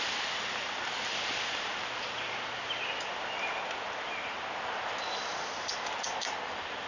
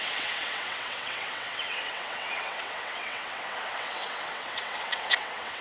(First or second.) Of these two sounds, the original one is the first